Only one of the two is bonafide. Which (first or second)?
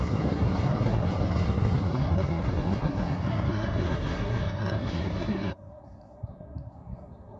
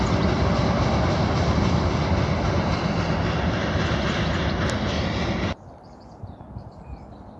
second